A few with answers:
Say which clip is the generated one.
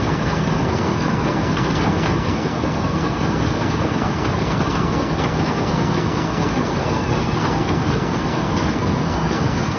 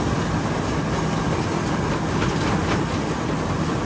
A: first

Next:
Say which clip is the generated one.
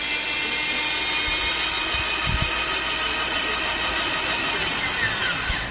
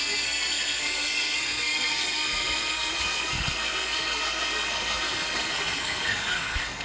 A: second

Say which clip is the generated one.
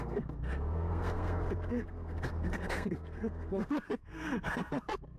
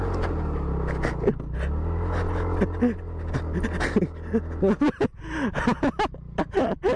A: first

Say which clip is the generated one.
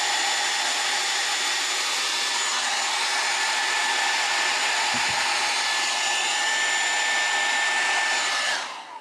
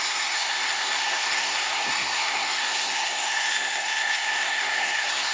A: second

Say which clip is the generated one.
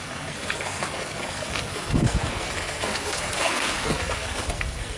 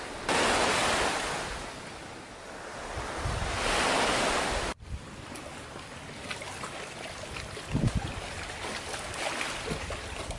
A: first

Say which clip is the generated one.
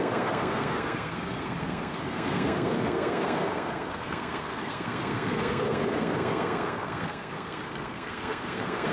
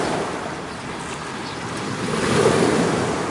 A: first